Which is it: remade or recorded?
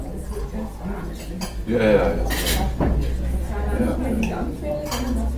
recorded